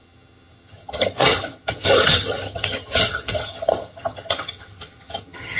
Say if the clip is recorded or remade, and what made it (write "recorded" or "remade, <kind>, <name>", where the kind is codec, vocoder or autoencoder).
remade, vocoder, HiFi-GAN